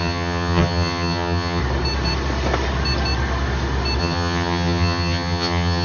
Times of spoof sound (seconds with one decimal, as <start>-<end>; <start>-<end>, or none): 0.0-1.6; 4.0-5.8